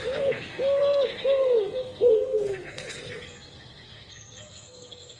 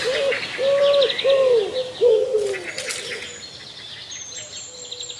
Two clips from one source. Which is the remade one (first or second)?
first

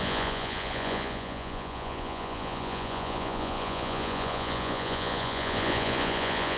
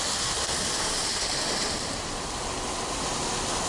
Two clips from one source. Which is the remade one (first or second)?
first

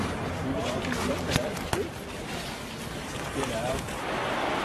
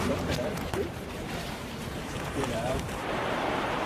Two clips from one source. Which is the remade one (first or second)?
second